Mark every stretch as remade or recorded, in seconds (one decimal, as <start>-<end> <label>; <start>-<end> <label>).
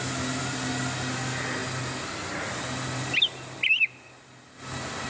0.0-5.1 recorded